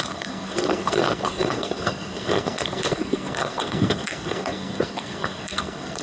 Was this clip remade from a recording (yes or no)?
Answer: yes